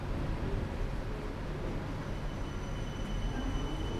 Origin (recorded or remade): recorded